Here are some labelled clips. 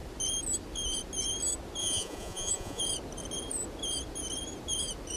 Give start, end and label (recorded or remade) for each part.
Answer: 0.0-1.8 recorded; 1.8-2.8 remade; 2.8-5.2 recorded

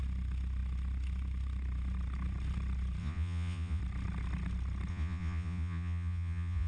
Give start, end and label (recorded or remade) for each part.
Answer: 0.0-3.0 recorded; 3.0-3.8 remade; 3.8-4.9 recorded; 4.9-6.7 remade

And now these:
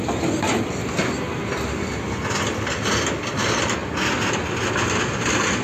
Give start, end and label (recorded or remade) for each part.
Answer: 0.0-5.6 recorded